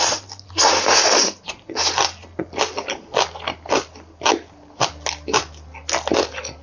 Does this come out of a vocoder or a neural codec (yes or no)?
no